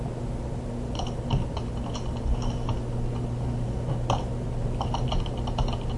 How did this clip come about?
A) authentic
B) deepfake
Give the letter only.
A